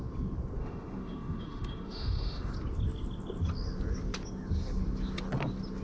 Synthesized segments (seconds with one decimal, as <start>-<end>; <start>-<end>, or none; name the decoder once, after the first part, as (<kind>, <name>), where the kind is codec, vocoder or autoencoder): 0.6-2.5 (autoencoder, DAC-VAE)